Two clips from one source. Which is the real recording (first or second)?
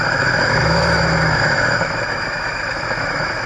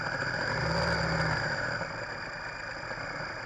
second